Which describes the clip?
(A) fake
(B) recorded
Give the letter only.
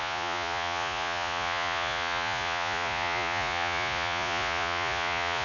A